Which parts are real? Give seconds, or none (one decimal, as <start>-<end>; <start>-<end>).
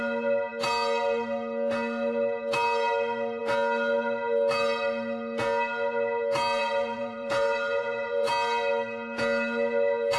0.0-6.6; 8.3-10.2